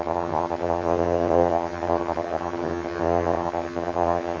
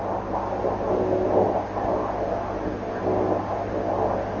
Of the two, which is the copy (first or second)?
first